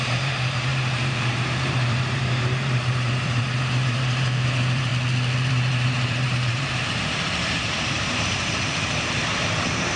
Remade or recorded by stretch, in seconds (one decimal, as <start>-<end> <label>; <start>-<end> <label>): 0.0-4.9 remade; 4.9-5.5 recorded; 5.5-10.0 remade